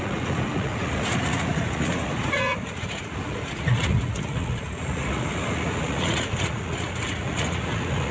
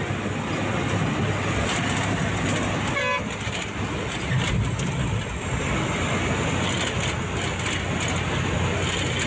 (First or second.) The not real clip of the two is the first